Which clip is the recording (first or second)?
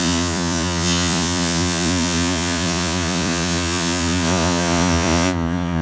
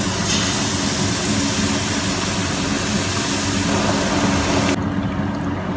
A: second